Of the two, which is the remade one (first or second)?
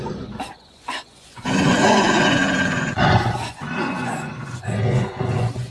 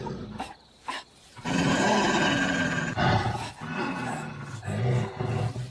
first